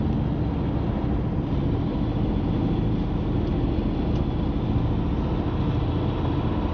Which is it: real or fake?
real